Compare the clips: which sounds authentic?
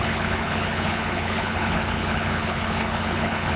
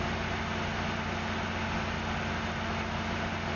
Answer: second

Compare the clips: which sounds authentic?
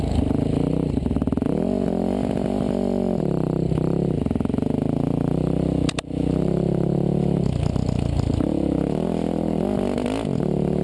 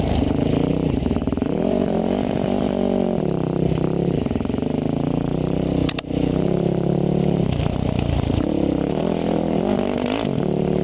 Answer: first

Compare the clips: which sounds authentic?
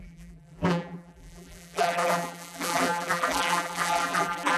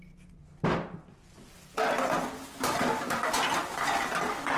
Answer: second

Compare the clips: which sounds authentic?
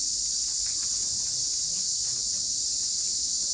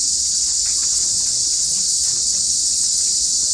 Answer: first